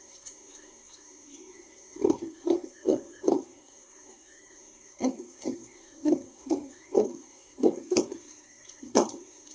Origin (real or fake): fake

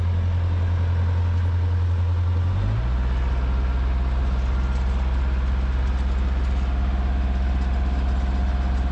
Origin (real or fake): real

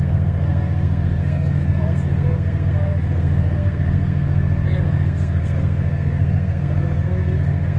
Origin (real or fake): fake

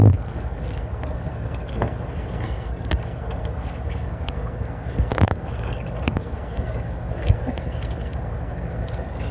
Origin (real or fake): fake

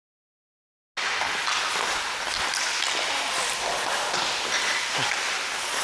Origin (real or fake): real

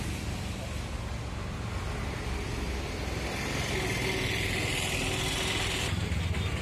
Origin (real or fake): real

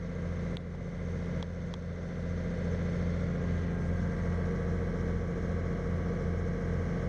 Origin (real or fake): real